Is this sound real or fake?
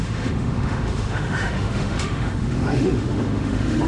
fake